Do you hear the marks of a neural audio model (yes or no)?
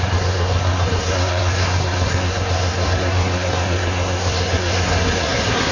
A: yes